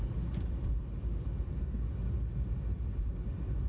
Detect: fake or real real